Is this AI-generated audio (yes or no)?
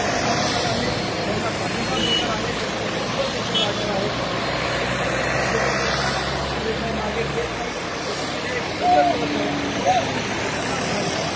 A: no